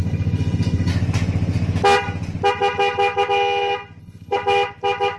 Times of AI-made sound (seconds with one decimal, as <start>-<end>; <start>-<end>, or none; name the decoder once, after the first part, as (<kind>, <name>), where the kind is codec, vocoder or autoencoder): 0.0-0.9 (codec, HILCodec); 4.0-4.4